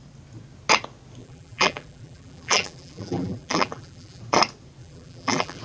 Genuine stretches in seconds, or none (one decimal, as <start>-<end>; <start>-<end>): 0.0-1.2; 4.2-4.8